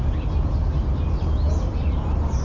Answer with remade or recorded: recorded